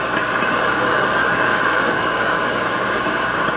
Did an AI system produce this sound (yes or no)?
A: yes